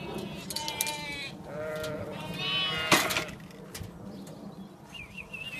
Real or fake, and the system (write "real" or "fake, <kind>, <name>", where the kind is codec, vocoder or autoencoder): real